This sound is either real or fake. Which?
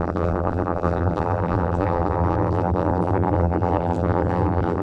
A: fake